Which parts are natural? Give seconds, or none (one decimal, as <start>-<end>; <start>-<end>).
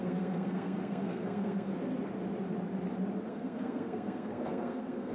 1.7-3.3